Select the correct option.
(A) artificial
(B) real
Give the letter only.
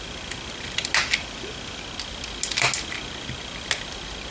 B